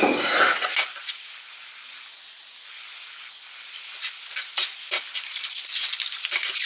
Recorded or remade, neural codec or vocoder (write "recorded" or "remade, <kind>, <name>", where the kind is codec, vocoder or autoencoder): recorded